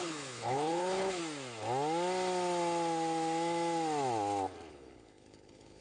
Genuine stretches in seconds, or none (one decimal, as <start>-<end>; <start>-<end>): 1.2-4.7